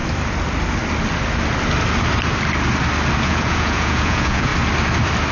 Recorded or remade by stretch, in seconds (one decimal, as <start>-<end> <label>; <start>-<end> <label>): 0.0-3.2 recorded; 3.2-4.5 remade; 4.5-5.3 recorded